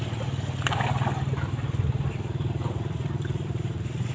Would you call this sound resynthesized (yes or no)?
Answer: no